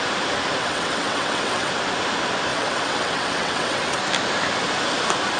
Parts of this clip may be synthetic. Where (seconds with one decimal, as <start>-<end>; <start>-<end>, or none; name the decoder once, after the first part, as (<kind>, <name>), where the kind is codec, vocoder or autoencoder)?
0.6-1.7 (vocoder, WaveNeXt); 2.5-4.0